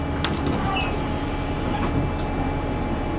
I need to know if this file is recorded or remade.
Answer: recorded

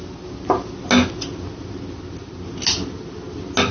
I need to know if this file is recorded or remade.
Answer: recorded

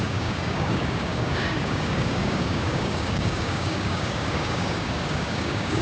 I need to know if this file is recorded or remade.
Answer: remade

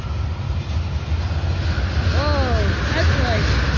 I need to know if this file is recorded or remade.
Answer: recorded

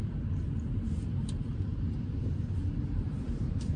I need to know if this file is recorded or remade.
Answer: remade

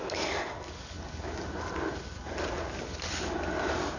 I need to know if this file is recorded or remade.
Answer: recorded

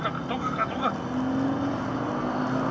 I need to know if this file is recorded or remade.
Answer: recorded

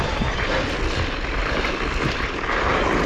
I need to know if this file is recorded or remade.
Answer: recorded